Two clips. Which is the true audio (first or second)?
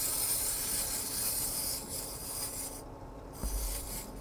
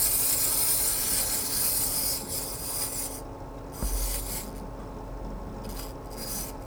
second